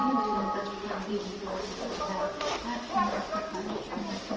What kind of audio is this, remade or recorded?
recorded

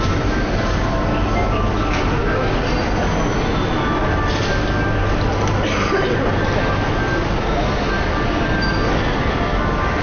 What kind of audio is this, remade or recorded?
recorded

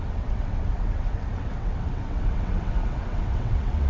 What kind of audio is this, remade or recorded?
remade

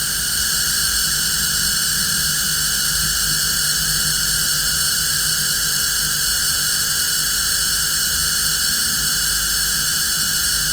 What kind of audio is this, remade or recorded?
recorded